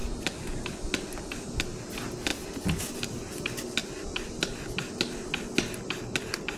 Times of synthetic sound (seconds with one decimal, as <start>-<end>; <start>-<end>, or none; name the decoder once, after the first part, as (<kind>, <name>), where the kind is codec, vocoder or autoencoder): none